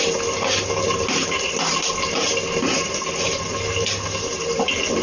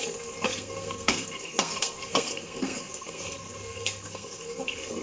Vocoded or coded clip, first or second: second